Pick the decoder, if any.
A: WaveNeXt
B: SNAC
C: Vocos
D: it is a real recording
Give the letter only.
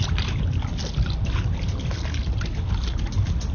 D